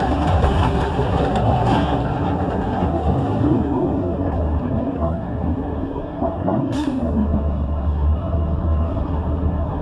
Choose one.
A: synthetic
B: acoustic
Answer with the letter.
A